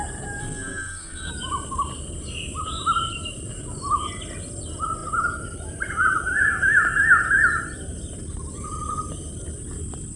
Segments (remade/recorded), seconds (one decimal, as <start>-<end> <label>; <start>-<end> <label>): 0.0-0.4 recorded; 0.4-1.3 remade; 1.3-10.2 recorded